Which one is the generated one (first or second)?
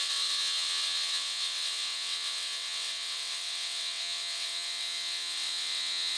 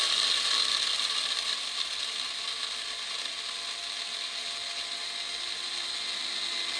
first